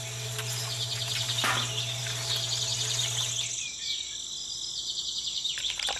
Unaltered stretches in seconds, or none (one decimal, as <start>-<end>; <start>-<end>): 0.0-6.0